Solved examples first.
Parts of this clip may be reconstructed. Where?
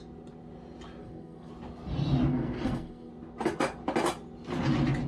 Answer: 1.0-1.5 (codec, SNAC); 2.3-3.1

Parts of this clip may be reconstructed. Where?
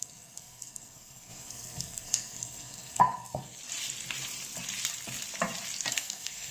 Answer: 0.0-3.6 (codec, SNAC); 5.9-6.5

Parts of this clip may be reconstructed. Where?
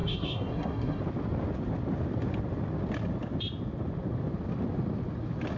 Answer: 0.0-1.0 (codec, SNAC)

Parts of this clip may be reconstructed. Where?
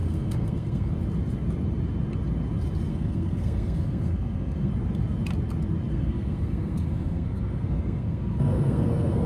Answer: 0.0-0.9 (codec, SNAC); 2.9-4.7; 5.9-9.3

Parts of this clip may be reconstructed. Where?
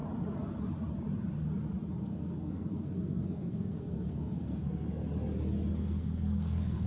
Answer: 2.0-5.0 (codec, SNAC); 5.7-6.9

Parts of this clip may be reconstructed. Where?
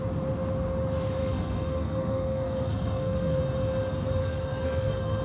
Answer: 1.2-3.4 (codec, SNAC); 4.2-5.2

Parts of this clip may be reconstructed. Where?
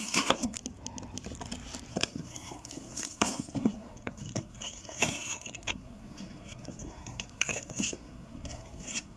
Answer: 0.0-0.6 (codec, SNAC); 1.9-9.2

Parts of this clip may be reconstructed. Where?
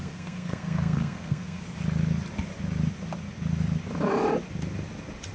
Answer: 0.0-1.6 (codec, SNAC)